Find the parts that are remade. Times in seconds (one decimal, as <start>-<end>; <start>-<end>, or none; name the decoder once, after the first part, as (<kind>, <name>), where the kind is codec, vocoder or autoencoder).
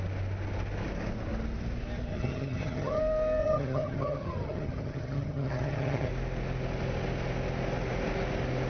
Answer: 2.1-3.0 (vocoder, HiFi-GAN); 3.4-6.1